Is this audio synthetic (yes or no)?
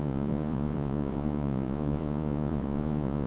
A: yes